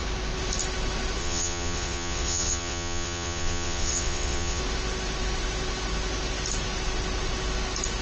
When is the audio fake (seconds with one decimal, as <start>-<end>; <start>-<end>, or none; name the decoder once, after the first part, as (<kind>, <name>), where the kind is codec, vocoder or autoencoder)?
1.2-4.6 (vocoder, WaveNeXt)